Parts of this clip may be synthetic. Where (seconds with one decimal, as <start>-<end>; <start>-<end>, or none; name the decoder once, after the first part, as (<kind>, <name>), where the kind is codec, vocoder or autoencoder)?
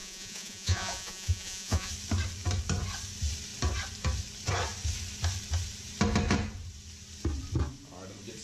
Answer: 0.0-1.9 (vocoder, Vocos)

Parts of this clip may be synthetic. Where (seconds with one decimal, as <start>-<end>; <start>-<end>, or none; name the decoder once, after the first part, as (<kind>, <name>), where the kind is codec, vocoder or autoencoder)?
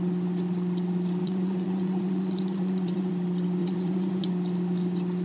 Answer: 1.2-3.1 (vocoder, Vocos); 3.6-4.3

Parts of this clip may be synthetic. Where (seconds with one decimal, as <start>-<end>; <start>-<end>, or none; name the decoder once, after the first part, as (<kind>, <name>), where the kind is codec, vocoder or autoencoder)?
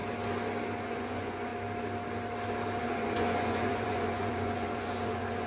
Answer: 0.8-1.5 (vocoder, Vocos); 2.8-5.5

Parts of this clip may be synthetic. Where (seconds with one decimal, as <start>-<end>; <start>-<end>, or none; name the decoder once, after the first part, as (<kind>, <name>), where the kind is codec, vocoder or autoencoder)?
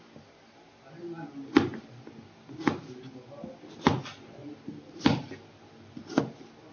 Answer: none